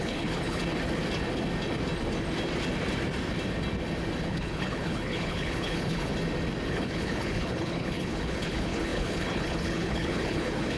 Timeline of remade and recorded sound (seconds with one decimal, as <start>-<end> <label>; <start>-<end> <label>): 0.0-0.6 remade; 0.6-4.2 recorded; 4.2-6.1 remade; 6.1-6.7 recorded; 6.7-10.8 remade

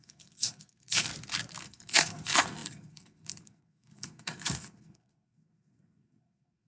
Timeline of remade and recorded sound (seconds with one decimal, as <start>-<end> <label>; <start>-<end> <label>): 0.0-1.1 remade; 1.1-1.6 recorded; 1.6-6.7 remade

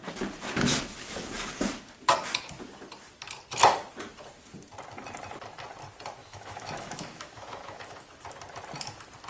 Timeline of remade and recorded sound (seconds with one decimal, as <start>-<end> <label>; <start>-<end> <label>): 0.0-6.2 recorded; 6.2-8.1 remade; 8.1-9.3 recorded

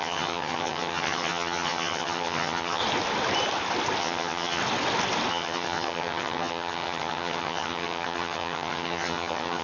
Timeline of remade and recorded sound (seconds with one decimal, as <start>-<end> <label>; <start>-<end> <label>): 0.0-2.8 remade; 2.8-4.0 recorded; 4.0-4.6 remade; 4.6-5.3 recorded; 5.3-9.6 remade

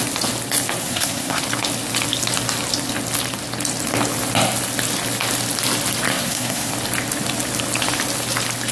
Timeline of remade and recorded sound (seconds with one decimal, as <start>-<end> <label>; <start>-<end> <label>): 0.0-0.8 recorded; 0.8-1.4 remade; 1.4-6.1 recorded; 6.1-6.7 remade; 6.7-8.7 recorded